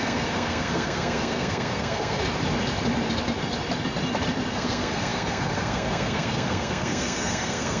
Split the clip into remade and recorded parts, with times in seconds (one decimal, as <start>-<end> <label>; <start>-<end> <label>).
0.0-2.2 remade; 2.2-4.5 recorded; 4.5-7.8 remade